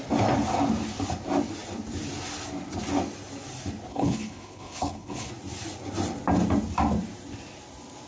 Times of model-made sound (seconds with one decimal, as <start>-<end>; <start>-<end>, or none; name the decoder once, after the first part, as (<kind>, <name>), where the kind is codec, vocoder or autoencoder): 3.9-5.3 (codec, HILCodec)